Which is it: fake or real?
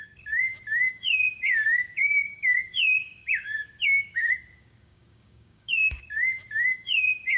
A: fake